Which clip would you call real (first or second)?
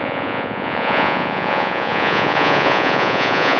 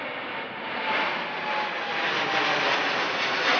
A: second